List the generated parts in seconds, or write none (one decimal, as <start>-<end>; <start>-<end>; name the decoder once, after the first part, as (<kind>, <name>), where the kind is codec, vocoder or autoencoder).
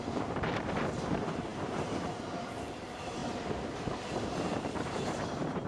0.0-3.2 (vocoder, BigVGAN v2); 4.2-5.7